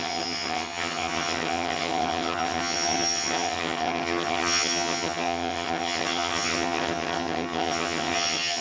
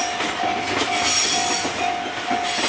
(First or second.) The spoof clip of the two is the first